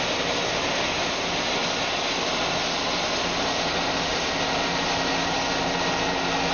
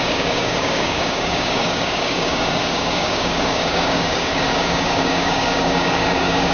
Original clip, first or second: first